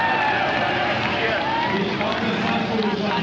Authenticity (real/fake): fake